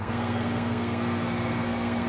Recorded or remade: remade